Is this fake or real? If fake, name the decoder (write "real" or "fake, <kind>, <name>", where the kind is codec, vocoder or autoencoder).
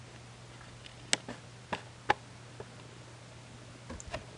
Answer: real